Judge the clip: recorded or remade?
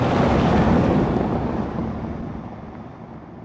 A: recorded